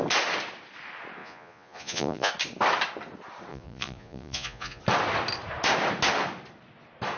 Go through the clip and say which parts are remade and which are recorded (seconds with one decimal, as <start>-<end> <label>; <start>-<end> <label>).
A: 0.0-1.2 recorded; 1.2-2.3 remade; 2.3-3.5 recorded; 3.5-4.8 remade; 4.8-7.2 recorded